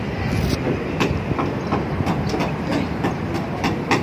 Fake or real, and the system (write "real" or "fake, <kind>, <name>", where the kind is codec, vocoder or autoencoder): real